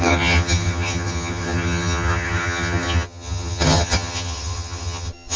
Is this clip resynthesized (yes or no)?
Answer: yes